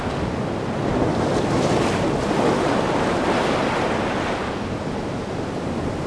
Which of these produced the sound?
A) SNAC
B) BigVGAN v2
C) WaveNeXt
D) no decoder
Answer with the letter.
D